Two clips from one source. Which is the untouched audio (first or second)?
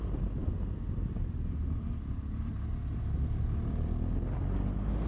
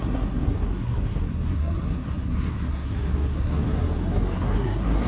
first